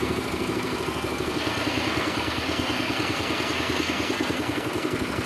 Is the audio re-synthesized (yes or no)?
yes